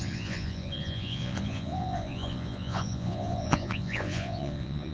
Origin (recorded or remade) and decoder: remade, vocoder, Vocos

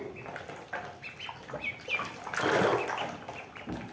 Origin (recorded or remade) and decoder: recorded